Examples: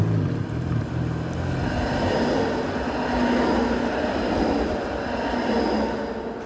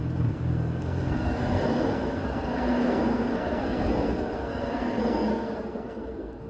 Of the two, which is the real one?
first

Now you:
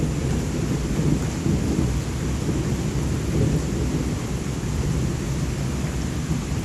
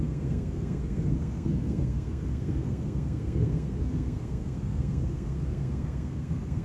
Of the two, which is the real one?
first